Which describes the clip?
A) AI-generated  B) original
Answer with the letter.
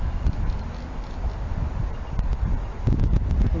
B